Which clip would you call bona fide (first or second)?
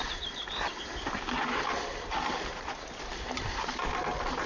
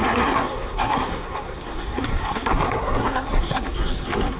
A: first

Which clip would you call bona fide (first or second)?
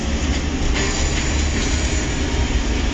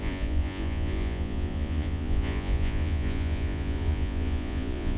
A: first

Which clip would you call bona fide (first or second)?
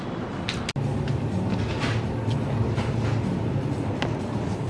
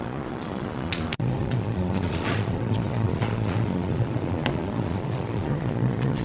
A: first